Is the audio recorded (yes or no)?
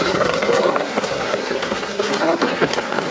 no